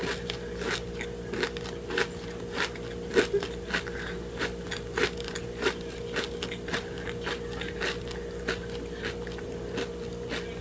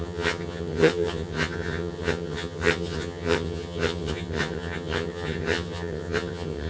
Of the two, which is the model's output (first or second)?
second